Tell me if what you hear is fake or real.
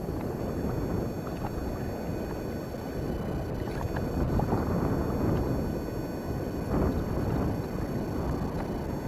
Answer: real